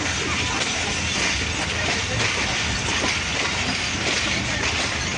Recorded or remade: recorded